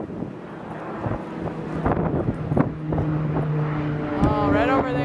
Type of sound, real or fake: real